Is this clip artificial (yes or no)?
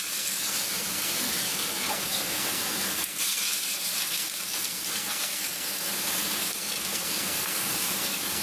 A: yes